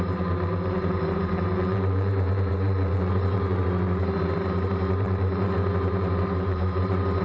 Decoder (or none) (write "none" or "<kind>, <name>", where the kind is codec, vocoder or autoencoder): vocoder, BigVGAN v2